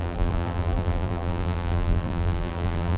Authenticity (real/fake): fake